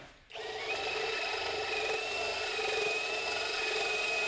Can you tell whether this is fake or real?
real